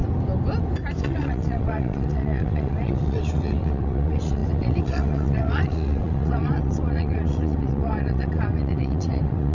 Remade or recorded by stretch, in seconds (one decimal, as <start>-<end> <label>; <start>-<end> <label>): 0.0-1.0 recorded; 1.0-9.5 remade